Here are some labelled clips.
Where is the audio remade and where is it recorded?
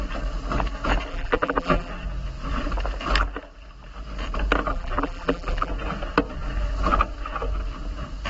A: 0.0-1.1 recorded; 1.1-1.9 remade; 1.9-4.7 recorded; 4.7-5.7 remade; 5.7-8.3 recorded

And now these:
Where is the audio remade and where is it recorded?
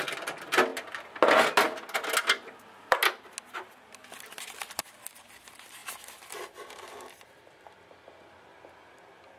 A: 0.0-5.8 recorded; 5.8-9.4 remade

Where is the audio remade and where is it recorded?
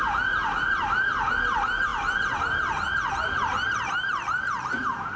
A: 0.0-0.4 recorded; 0.4-1.3 remade; 1.3-1.9 recorded; 1.9-4.7 remade; 4.7-5.2 recorded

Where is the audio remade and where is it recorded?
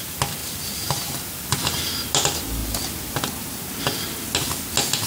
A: 0.0-0.4 recorded; 0.4-1.9 remade; 1.9-5.1 recorded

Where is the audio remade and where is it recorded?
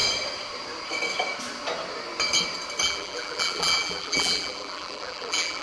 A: 0.0-2.8 recorded; 2.8-5.6 remade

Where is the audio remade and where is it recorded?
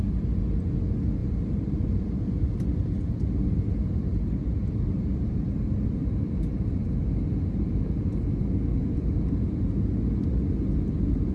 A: 0.0-1.2 recorded; 1.2-2.6 remade; 2.6-4.1 recorded; 4.1-4.8 remade; 4.8-6.0 recorded; 6.0-6.6 remade; 6.6-8.7 recorded; 8.7-9.3 remade; 9.3-11.3 recorded